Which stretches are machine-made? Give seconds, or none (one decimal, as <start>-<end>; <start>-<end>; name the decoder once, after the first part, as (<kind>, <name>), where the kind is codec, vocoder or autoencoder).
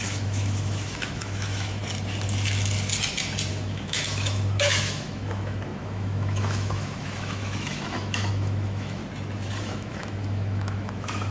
0.0-1.8 (autoencoder, DAC-VAE); 3.5-9.0; 9.6-11.3